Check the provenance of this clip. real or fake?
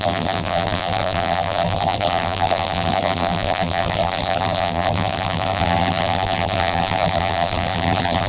fake